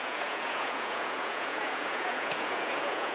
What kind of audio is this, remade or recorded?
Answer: remade